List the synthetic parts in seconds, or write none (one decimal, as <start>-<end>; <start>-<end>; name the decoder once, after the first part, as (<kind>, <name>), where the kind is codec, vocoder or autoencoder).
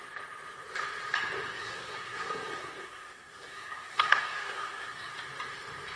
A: 1.5-5.1 (codec, SNAC)